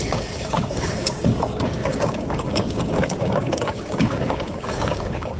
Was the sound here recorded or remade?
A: remade